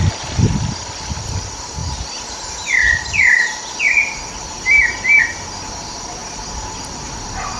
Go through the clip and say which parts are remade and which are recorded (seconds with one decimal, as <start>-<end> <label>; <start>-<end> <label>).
0.0-7.6 recorded